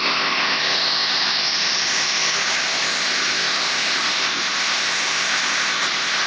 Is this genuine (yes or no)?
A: no